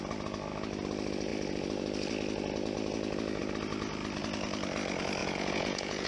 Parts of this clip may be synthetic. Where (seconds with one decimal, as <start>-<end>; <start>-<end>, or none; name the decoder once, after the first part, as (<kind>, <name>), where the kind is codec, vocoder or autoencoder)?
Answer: 5.2-6.1 (vocoder, Vocos)